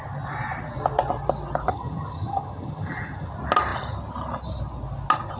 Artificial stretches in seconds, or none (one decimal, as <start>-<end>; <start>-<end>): 1.7-3.3